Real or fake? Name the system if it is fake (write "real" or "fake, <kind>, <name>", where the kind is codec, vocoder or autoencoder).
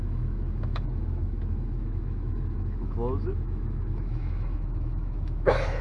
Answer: fake, autoencoder, DAC-VAE